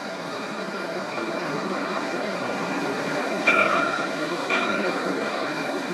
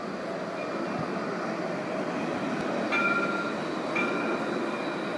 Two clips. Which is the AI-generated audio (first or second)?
first